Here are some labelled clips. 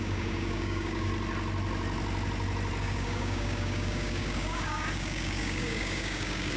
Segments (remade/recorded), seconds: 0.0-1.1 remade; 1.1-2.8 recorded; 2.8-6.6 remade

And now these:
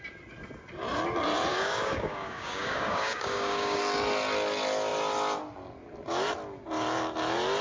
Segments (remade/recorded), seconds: 0.0-1.5 recorded; 1.5-3.8 remade; 3.8-7.6 recorded

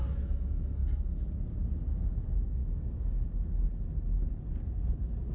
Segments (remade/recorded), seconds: 0.0-2.6 recorded; 2.6-3.4 remade; 3.4-5.3 recorded